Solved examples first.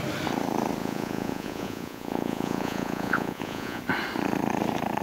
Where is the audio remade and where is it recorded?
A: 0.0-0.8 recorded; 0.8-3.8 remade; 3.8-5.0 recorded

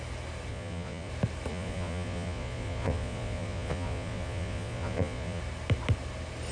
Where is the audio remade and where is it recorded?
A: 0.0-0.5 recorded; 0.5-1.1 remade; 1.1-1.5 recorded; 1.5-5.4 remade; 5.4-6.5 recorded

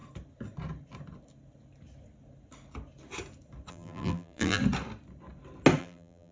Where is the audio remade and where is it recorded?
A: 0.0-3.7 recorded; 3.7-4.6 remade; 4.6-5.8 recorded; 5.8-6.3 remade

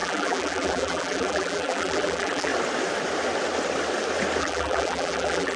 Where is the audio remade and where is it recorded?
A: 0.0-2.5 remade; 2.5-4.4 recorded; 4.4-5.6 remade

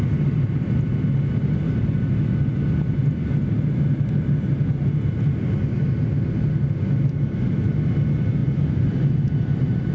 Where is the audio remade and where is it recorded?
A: 0.0-8.4 recorded; 8.4-9.9 remade

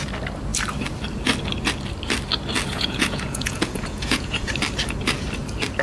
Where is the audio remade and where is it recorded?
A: 0.0-2.7 recorded; 2.7-4.5 remade; 4.5-5.8 recorded

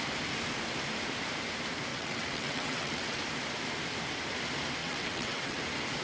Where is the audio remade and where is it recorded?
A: 0.0-1.9 recorded; 1.9-3.2 remade; 3.2-4.8 recorded; 4.8-5.6 remade; 5.6-6.0 recorded

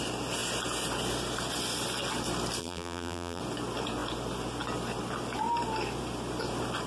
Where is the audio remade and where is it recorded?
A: 0.0-2.6 recorded; 2.6-3.4 remade; 3.4-6.9 recorded